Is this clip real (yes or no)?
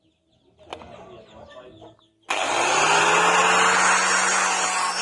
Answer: yes